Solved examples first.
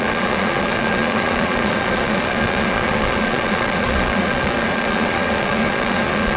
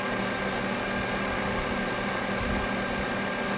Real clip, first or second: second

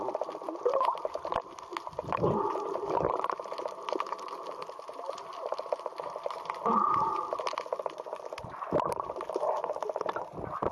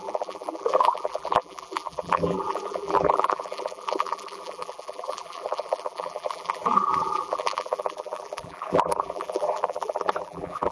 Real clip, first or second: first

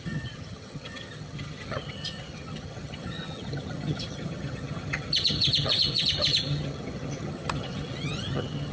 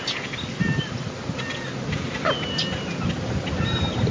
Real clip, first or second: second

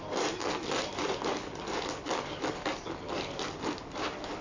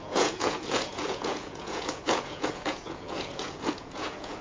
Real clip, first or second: first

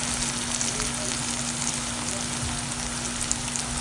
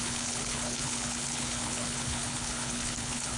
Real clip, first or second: first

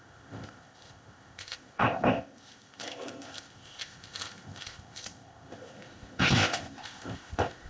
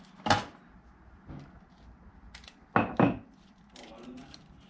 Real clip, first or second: second